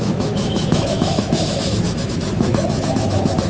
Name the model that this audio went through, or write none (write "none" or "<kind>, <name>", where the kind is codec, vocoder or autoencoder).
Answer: autoencoder, DAC-VAE